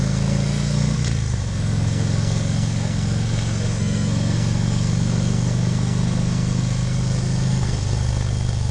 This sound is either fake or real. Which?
fake